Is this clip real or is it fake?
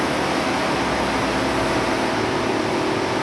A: real